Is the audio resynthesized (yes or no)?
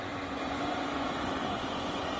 yes